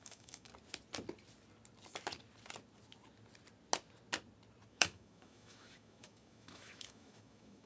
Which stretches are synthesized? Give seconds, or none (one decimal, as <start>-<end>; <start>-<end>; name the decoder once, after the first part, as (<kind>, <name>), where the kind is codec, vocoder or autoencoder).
0.0-0.5 (autoencoder, DAC-VAE); 4.7-7.7